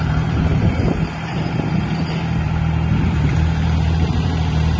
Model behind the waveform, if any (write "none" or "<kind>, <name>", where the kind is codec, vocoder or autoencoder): vocoder, BigVGAN v2